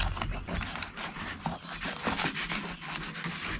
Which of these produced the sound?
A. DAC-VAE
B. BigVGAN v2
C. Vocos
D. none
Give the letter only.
D